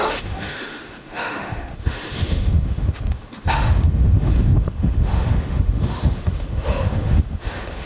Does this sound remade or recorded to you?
remade